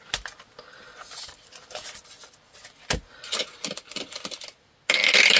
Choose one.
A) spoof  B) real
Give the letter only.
B